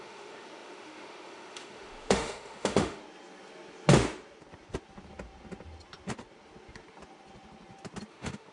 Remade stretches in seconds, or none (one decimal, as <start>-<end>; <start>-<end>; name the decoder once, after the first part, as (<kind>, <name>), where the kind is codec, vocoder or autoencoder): 0.0-3.0 (autoencoder, DAC-VAE); 8.1-8.5